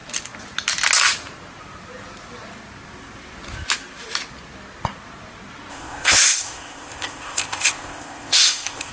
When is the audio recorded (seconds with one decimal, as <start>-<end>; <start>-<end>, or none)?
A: 0.0-5.7